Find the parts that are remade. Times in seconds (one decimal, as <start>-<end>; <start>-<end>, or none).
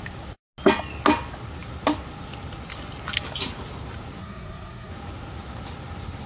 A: 4.2-4.9